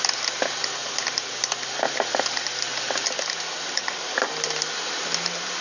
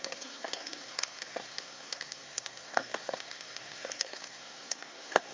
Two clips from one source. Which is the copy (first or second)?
second